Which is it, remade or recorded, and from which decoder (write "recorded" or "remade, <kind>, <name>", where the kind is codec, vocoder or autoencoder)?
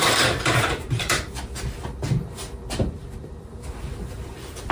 remade, vocoder, BigVGAN v2